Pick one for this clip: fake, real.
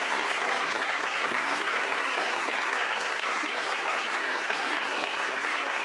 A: fake